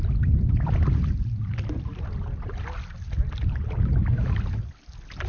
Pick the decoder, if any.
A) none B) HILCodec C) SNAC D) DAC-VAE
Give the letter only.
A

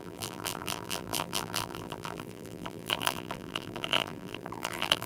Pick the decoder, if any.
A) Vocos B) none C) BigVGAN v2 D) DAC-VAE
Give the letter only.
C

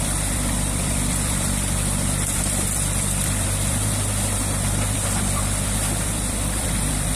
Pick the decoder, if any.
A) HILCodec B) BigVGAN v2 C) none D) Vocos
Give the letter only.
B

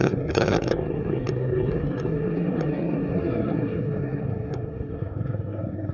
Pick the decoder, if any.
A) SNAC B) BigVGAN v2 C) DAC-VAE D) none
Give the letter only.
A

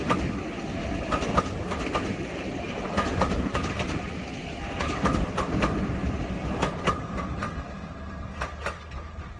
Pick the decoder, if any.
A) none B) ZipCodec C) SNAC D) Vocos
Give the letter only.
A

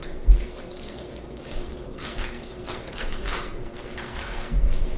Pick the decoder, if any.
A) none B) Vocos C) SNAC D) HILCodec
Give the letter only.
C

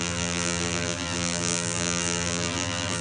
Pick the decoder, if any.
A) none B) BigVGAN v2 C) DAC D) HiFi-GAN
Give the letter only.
B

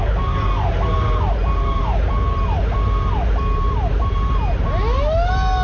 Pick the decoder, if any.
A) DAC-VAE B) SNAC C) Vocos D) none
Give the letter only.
D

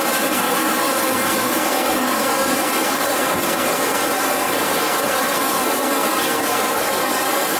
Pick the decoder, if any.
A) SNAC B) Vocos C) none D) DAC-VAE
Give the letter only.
A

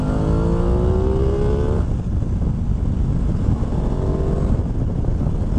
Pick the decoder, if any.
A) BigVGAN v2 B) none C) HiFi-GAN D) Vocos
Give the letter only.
B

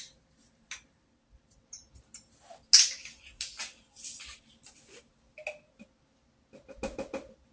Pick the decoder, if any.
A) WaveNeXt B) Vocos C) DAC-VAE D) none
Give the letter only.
D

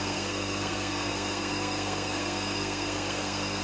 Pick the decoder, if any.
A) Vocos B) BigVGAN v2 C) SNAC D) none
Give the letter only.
C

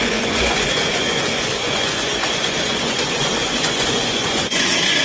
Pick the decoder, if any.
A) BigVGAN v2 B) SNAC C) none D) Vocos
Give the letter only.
D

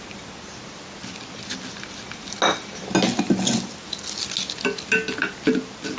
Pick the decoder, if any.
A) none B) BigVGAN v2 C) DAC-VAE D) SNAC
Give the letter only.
A